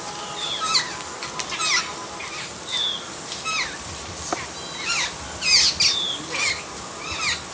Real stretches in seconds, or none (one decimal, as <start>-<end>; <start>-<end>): 0.0-7.5